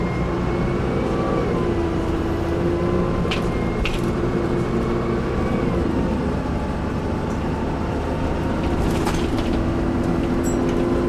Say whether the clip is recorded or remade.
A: recorded